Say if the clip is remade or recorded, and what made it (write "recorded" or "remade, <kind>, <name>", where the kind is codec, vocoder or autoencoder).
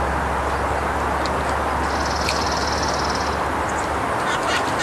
recorded